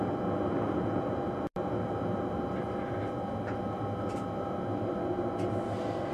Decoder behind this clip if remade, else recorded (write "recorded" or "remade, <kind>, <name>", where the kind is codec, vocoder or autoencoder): recorded